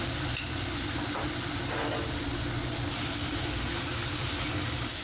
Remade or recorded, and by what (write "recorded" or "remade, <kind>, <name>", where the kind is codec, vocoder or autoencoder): recorded